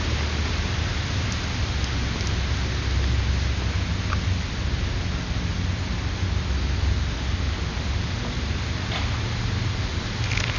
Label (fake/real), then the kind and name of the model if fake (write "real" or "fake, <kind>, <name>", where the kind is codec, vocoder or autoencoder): real